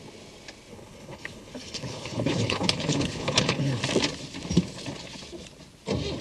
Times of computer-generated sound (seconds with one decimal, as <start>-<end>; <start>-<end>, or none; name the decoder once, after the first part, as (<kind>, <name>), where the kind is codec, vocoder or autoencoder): 0.7-3.8 (codec, HILCodec)